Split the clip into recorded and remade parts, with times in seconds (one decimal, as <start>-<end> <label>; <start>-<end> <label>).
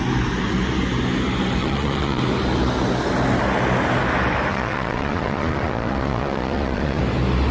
0.0-1.6 recorded; 1.6-2.2 remade; 2.2-4.5 recorded; 4.5-7.0 remade; 7.0-7.5 recorded